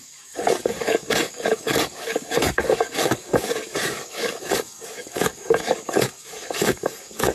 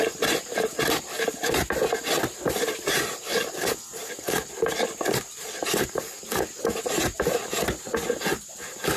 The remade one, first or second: first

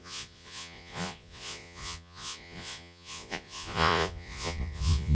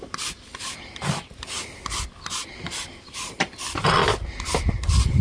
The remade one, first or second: first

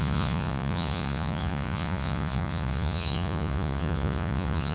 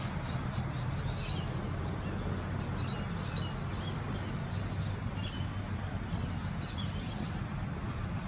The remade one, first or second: first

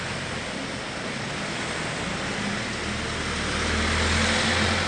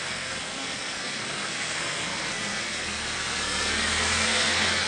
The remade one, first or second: second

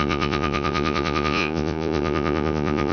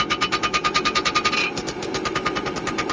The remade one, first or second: first